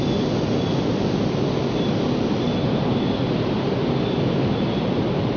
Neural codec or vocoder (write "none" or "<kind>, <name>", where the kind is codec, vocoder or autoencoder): none